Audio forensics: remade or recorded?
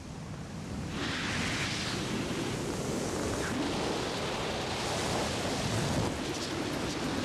recorded